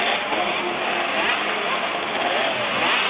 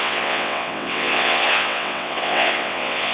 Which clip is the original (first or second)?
first